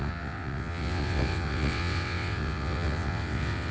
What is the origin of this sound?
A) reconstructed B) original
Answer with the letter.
A